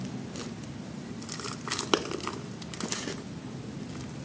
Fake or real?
real